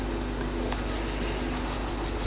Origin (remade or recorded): recorded